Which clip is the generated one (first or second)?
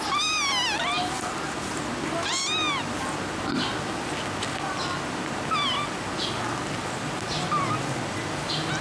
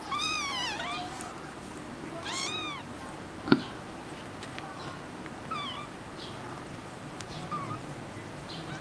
second